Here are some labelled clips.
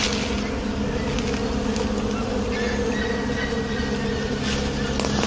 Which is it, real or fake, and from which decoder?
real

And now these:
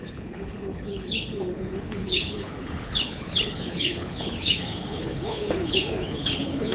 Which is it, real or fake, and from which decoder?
fake, codec, HILCodec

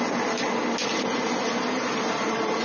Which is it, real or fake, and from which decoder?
real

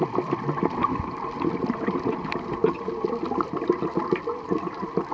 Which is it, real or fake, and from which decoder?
real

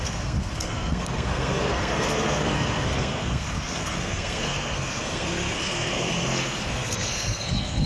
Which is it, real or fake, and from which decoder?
fake, codec, SNAC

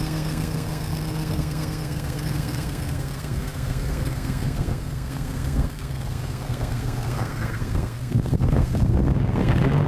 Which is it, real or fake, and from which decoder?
fake, codec, SNAC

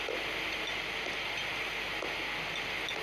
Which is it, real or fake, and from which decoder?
real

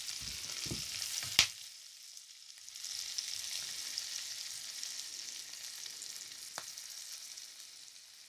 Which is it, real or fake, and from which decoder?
real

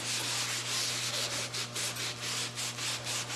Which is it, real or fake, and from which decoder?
real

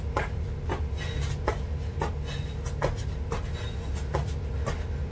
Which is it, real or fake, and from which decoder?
real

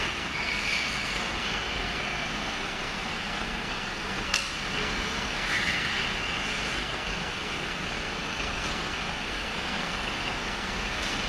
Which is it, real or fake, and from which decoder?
fake, codec, SNAC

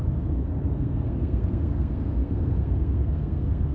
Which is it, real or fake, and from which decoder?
fake, codec, SNAC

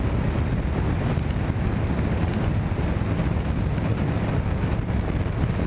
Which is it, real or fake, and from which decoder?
real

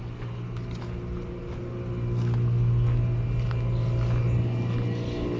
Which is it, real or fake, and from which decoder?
real